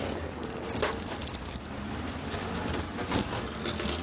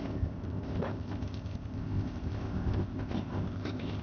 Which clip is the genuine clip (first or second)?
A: first